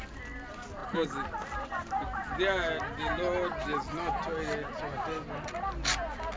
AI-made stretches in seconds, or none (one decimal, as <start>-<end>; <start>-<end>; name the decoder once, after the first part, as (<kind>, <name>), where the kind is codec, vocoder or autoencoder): none